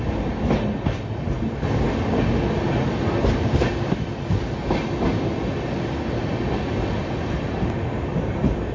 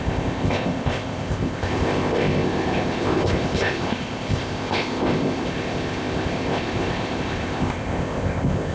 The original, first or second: first